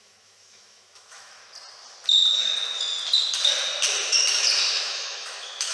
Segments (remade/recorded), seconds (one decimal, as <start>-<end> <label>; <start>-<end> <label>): 0.0-1.4 remade; 1.4-4.8 recorded; 4.8-5.7 remade